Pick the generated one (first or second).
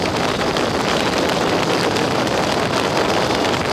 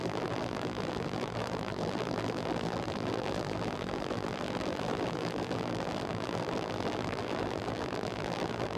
second